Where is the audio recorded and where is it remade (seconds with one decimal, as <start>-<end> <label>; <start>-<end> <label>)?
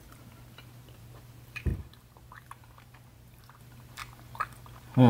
0.0-4.0 remade; 4.0-5.1 recorded